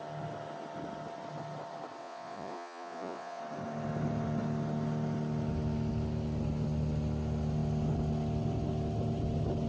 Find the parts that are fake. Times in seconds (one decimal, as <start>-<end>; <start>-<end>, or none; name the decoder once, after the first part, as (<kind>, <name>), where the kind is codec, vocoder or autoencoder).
2.0-3.4 (vocoder, Vocos)